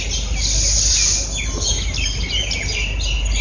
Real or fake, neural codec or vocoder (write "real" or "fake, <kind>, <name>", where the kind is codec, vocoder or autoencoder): real